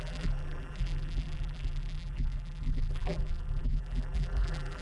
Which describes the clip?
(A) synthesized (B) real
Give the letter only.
A